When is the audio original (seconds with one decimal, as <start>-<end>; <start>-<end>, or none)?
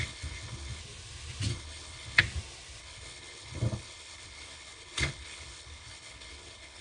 0.8-1.5; 2.2-2.8